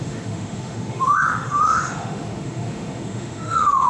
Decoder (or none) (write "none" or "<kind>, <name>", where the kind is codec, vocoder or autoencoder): autoencoder, DAC-VAE